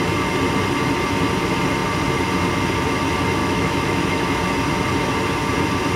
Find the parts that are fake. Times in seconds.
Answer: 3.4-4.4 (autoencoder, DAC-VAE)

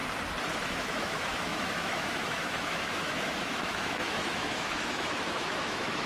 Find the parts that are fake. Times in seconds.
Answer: 0.7-6.1 (autoencoder, DAC-VAE)

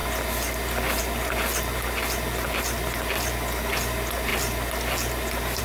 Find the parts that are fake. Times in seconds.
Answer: none

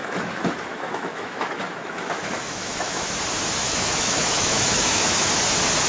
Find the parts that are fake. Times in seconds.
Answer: 0.0-3.1 (autoencoder, DAC-VAE); 3.6-5.3

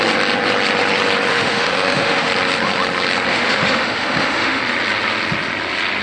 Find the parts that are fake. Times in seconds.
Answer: 1.3-2.3 (autoencoder, DAC-VAE); 3.3-4.6

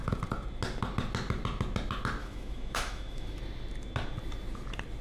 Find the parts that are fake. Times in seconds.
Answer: 2.2-3.4 (autoencoder, DAC-VAE)